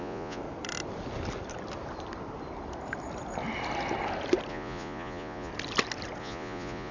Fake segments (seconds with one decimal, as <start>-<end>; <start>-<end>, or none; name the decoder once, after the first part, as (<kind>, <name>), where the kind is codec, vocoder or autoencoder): 0.0-0.4 (vocoder, Vocos); 4.5-5.5; 6.2-6.9